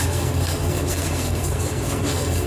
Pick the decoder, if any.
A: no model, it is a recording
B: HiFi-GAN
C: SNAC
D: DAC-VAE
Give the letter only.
C